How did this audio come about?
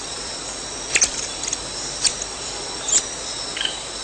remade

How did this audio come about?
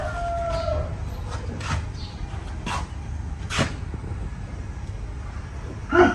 recorded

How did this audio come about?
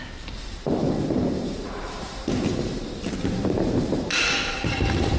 remade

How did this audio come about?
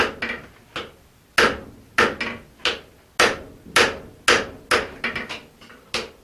recorded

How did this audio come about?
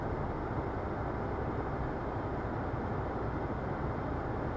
recorded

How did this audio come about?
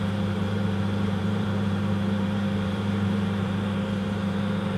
remade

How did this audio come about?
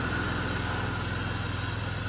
recorded